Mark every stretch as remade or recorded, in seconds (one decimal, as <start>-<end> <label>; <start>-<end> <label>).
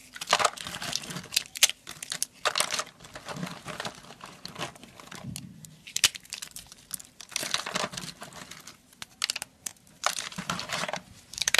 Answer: 0.0-9.7 recorded; 9.7-11.6 remade